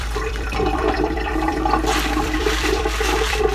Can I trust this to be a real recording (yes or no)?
no